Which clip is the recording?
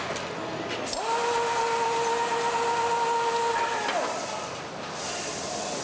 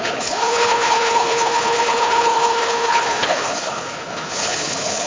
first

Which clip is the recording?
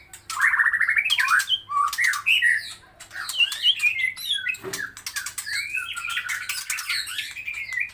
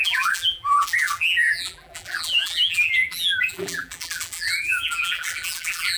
first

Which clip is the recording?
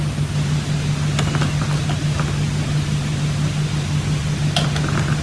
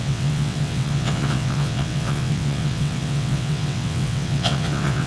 first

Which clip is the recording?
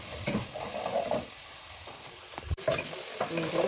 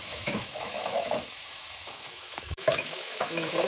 first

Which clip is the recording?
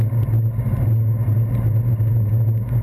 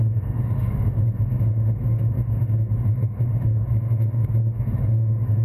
first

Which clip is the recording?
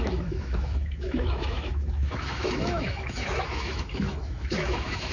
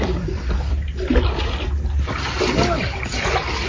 second